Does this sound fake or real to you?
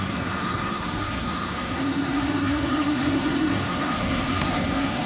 fake